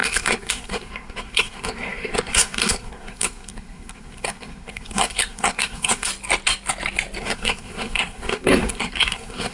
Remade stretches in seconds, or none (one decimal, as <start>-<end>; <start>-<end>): 0.0-6.1; 7.2-9.5